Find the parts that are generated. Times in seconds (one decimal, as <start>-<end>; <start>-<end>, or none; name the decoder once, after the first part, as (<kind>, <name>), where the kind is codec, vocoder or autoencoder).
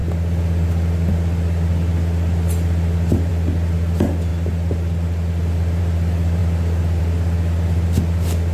none